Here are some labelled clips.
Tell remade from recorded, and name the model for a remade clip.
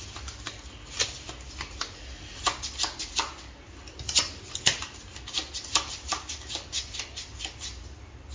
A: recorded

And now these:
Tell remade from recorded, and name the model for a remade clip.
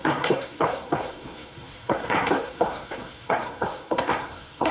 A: remade, codec, SNAC